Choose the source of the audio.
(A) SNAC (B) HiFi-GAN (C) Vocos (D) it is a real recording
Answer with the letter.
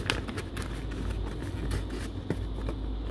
D